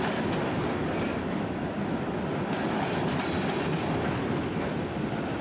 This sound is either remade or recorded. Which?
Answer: recorded